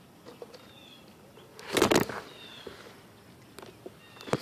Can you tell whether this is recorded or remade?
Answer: recorded